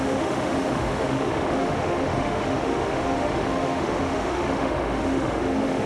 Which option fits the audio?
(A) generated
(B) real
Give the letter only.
A